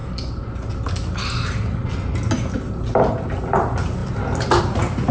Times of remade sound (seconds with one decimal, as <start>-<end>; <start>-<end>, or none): none